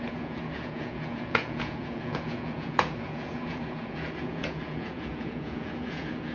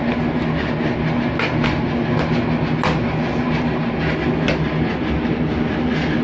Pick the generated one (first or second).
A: first